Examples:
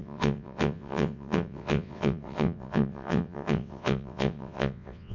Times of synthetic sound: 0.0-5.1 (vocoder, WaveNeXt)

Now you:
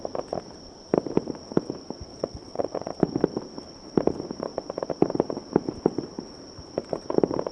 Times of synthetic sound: 2.1-2.9 (vocoder, WaveNeXt)

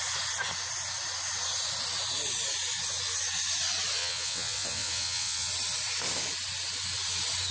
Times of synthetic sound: 4.0-5.5 (vocoder, WaveNeXt)

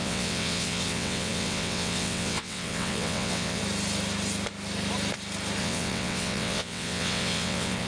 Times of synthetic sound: 0.0-3.6 (vocoder, WaveNeXt); 5.6-7.9